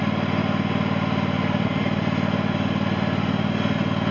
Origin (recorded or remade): recorded